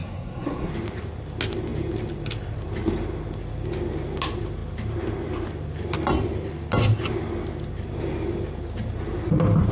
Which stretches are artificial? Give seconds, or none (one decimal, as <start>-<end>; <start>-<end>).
0.0-0.7

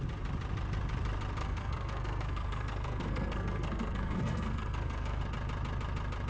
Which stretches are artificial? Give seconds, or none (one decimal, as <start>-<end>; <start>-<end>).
1.4-5.2

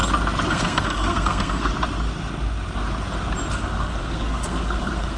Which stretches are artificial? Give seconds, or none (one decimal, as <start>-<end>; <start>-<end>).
0.5-1.7; 3.5-5.2